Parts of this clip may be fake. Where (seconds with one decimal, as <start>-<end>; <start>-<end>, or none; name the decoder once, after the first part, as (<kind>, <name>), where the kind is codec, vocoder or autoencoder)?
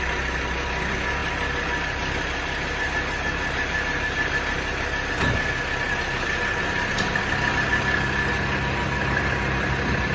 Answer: none